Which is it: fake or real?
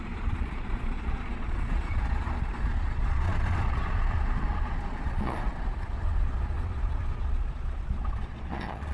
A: fake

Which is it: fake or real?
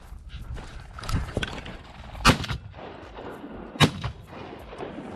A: fake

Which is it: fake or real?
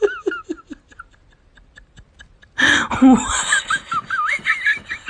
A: real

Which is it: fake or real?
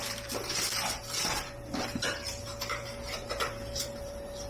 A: fake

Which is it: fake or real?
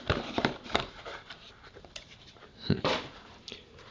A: fake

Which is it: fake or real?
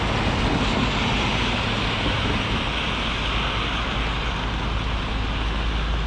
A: real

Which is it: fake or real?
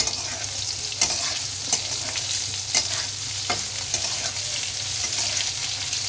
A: real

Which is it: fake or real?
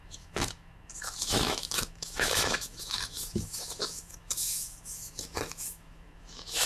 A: fake